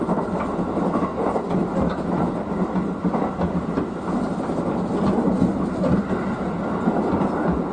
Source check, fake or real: real